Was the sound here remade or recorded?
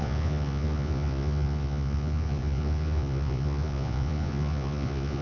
remade